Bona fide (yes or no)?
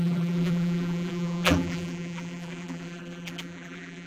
no